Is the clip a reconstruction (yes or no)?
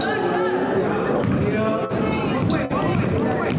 no